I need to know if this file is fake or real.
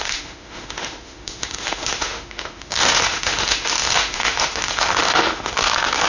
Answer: fake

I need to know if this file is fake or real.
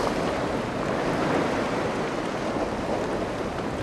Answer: real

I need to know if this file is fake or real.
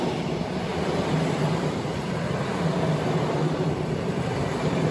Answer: fake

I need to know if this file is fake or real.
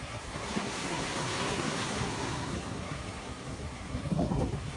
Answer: fake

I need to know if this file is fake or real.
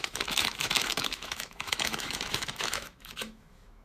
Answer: fake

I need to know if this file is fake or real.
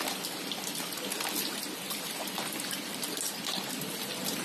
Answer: fake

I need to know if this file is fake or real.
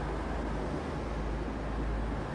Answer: real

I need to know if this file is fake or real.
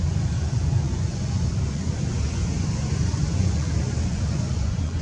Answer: fake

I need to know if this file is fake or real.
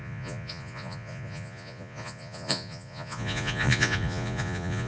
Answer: fake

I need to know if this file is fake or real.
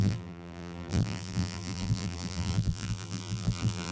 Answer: fake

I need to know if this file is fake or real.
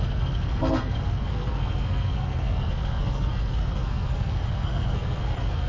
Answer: fake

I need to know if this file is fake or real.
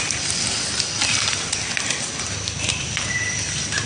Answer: real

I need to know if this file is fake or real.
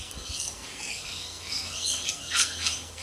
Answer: fake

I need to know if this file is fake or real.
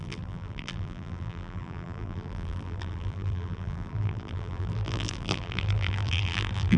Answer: fake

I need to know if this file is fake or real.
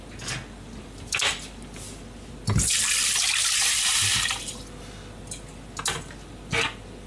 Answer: real